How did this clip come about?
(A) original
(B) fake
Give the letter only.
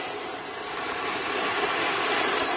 B